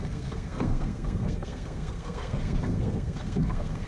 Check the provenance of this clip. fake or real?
fake